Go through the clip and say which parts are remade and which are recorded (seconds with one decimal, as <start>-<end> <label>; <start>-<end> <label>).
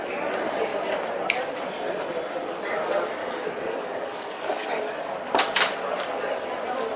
0.0-3.2 recorded; 3.2-4.9 remade; 4.9-7.0 recorded